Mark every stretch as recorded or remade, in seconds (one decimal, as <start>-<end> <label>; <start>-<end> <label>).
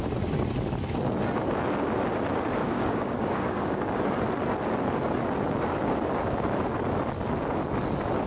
0.0-2.6 recorded; 2.6-3.9 remade; 3.9-8.3 recorded